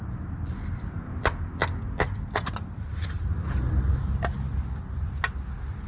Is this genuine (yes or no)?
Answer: yes